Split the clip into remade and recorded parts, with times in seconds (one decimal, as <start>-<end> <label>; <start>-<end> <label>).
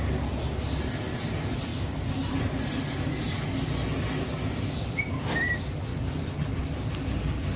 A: 0.0-7.6 recorded